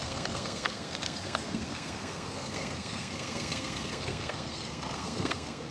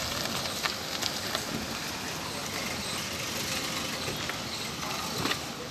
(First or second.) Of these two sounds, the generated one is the first